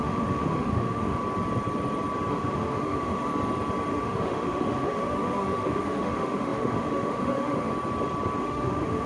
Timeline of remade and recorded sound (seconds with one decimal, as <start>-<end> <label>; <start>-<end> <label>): 0.0-1.2 remade; 1.2-2.3 recorded; 2.3-3.3 remade; 3.3-3.9 recorded; 3.9-7.7 remade; 7.7-8.4 recorded; 8.4-9.1 remade